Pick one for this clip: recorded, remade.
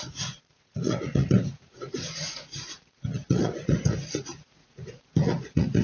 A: remade